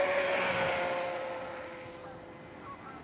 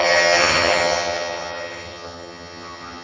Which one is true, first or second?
first